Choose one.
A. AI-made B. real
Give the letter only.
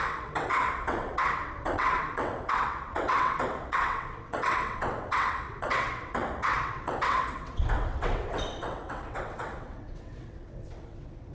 A